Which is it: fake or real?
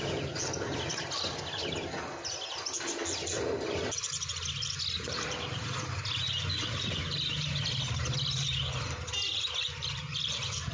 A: real